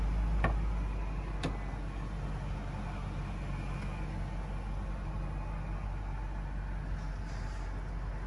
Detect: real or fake real